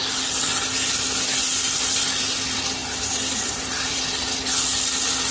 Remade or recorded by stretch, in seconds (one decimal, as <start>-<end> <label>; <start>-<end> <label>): 0.0-2.8 recorded; 2.8-4.0 remade; 4.0-5.3 recorded